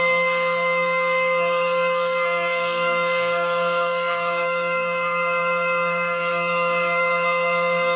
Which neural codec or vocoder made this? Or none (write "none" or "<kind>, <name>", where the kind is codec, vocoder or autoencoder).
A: codec, SNAC